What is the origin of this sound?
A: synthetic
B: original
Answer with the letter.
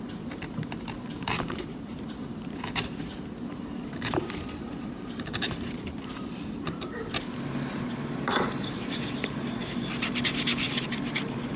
A